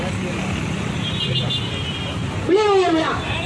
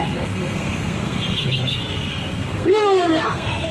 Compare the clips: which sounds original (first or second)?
first